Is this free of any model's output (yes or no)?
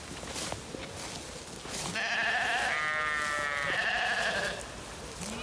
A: yes